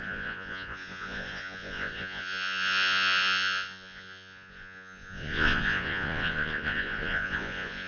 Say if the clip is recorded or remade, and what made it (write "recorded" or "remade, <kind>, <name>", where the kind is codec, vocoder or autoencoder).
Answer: remade, vocoder, Vocos